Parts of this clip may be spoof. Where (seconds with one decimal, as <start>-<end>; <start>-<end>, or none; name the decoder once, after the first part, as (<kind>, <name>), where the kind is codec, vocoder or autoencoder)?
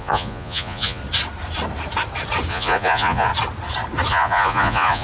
0.0-1.0 (vocoder, Vocos); 2.5-3.3; 4.1-5.0